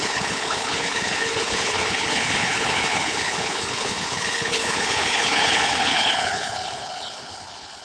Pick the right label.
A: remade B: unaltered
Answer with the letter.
A